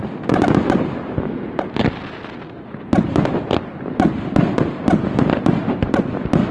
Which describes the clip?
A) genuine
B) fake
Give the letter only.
A